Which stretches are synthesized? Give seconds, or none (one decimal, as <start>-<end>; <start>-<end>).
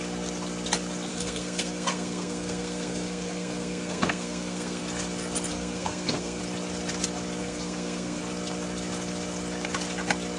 1.1-4.8; 5.5-6.4; 7.4-8.2